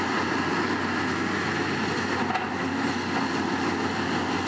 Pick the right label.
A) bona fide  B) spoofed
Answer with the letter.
A